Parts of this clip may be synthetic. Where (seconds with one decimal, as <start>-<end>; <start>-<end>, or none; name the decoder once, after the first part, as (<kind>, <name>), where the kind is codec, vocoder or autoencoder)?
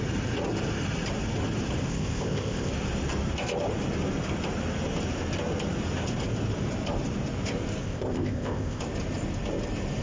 1.9-2.7 (codec, ZipCodec); 7.8-8.8